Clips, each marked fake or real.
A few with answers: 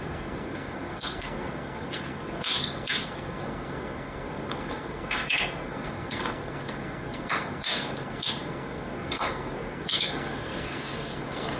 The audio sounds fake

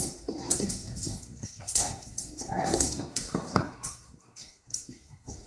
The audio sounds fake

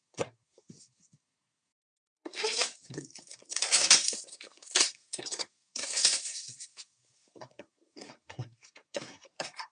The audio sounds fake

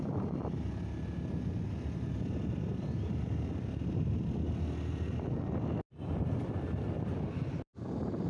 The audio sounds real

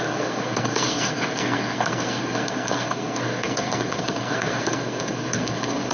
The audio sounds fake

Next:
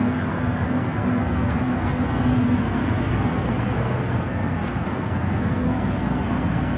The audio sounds fake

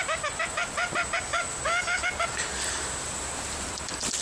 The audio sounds real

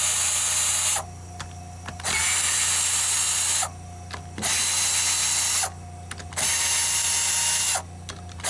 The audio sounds real